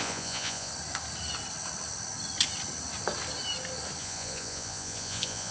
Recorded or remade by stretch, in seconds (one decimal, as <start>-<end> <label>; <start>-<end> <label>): 0.0-0.7 remade; 0.7-4.0 recorded; 4.0-5.5 remade